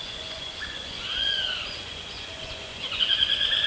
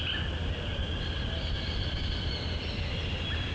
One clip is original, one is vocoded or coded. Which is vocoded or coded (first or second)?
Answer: first